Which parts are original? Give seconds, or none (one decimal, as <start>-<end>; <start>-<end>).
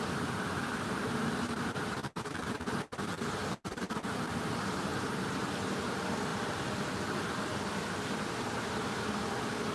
6.3-8.0